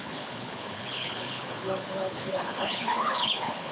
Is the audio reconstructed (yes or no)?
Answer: yes